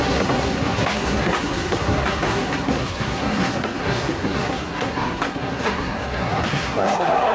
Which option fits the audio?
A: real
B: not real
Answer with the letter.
B